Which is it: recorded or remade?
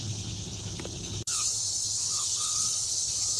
remade